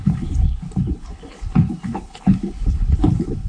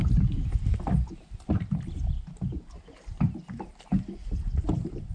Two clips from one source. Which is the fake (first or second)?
first